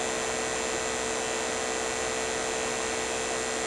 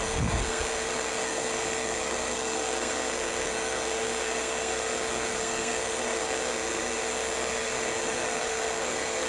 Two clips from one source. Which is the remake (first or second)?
second